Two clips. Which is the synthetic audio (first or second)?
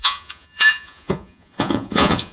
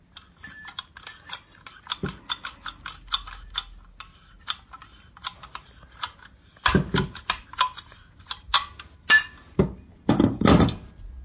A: first